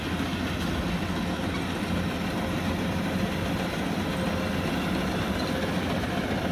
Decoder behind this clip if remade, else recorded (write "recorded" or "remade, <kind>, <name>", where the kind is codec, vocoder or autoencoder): recorded